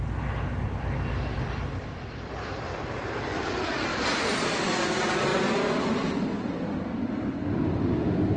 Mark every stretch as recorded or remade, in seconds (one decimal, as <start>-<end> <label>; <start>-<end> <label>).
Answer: 0.0-1.3 recorded; 1.3-3.3 remade; 3.3-3.9 recorded; 3.9-4.8 remade; 4.8-8.4 recorded